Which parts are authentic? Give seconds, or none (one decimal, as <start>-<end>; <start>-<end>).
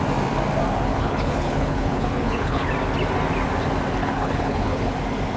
0.0-0.9; 2.7-4.0; 4.9-5.4